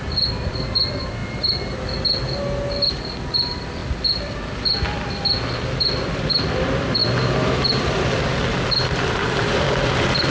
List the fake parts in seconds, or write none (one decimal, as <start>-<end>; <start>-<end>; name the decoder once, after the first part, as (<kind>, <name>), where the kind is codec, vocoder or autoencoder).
0.0-1.2 (vocoder, BigVGAN v2); 2.9-3.8; 6.0-10.3